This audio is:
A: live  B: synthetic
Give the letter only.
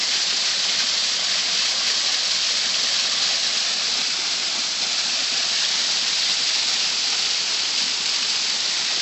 A